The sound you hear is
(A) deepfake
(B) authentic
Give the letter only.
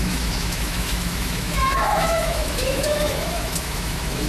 A